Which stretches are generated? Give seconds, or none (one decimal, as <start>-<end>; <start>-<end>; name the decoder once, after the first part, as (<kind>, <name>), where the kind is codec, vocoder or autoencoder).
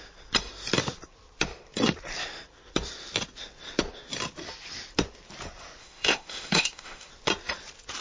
5.8-7.1 (autoencoder, DAC-VAE)